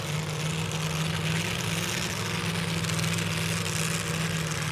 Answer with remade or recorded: recorded